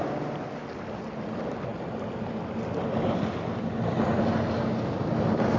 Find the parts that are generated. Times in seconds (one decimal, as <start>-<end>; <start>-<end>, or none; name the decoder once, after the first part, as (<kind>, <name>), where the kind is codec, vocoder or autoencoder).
none